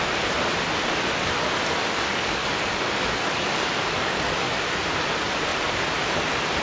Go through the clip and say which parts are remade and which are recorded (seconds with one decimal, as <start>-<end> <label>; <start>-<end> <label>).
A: 0.0-1.8 recorded; 1.8-4.5 remade; 4.5-6.6 recorded